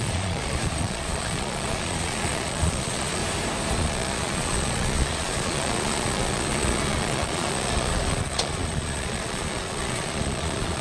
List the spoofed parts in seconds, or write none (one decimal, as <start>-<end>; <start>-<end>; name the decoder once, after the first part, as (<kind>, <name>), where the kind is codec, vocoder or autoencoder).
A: 0.0-3.2 (vocoder, Vocos); 3.7-10.8

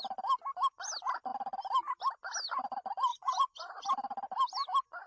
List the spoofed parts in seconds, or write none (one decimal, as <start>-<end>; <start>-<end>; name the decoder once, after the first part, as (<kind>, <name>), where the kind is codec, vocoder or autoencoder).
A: 3.1-3.9 (vocoder, Vocos)